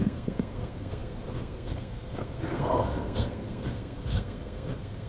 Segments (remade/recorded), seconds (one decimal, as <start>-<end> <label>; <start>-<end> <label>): 0.0-5.1 remade